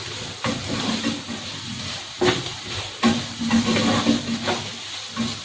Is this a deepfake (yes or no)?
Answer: no